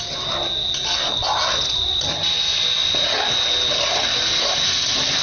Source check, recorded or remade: recorded